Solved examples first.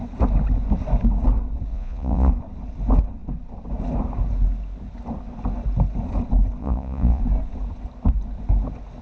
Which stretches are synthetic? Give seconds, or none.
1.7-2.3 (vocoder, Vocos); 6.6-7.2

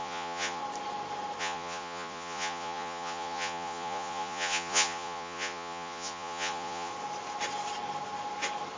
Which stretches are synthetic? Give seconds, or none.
0.0-0.6 (vocoder, Vocos); 1.4-6.9

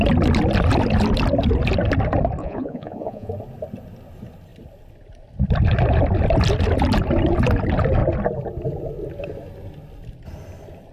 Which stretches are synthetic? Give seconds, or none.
2.4-3.3 (vocoder, Vocos)

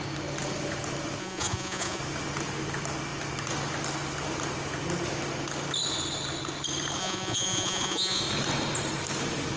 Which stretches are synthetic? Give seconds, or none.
1.2-2.0 (vocoder, Vocos); 7.0-8.2

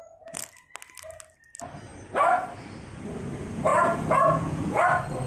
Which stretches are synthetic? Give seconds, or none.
3.7-4.8 (vocoder, Vocos)

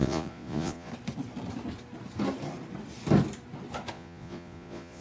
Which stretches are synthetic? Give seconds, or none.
0.0-0.9 (vocoder, Vocos); 3.9-5.0